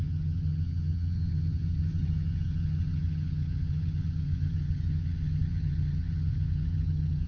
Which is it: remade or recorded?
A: remade